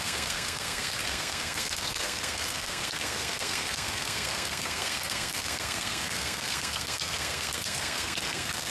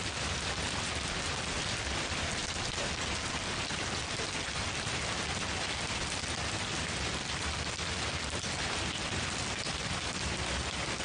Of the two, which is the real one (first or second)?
second